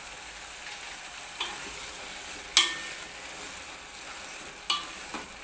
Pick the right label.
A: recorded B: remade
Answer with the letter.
A